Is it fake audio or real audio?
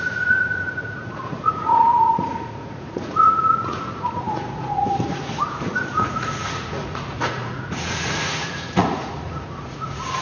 fake